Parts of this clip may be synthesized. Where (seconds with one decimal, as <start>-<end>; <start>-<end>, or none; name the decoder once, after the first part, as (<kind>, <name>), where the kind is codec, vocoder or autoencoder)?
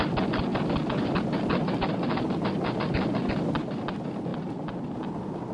none